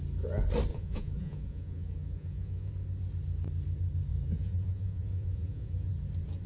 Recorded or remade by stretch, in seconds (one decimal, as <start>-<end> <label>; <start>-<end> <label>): 0.0-0.7 recorded; 0.7-2.7 remade; 2.7-4.1 recorded; 4.1-5.9 remade; 5.9-6.5 recorded